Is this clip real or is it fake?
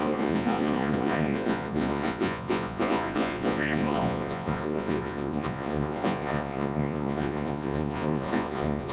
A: fake